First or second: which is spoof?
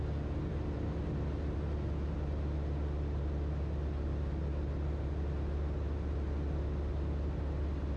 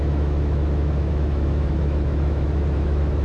second